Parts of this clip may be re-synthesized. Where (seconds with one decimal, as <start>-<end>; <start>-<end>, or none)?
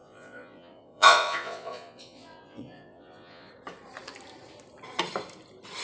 0.0-3.5